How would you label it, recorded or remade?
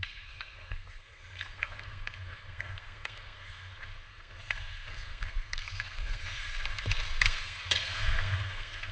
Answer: remade